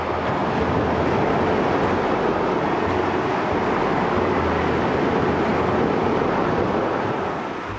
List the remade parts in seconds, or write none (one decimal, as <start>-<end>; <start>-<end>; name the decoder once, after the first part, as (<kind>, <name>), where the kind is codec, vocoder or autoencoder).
none

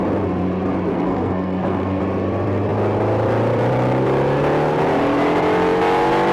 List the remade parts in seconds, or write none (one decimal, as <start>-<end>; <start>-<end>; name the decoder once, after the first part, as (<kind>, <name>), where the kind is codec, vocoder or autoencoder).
0.9-2.0 (codec, SNAC)

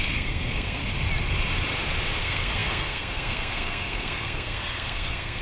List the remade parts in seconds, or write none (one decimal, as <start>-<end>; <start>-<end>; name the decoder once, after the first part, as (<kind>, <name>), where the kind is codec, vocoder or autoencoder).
0.0-0.8 (codec, SNAC); 2.2-5.4

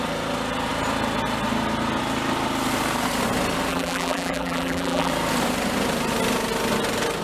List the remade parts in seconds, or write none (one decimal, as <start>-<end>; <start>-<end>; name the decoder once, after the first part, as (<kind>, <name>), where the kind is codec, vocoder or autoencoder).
3.7-5.1 (vocoder, BigVGAN v2)